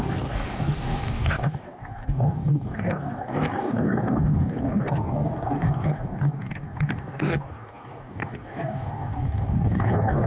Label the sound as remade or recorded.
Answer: remade